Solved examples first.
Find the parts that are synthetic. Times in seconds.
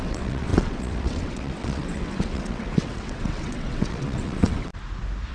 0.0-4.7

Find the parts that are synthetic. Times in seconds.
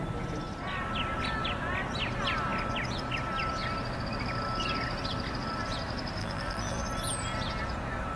6.2-6.8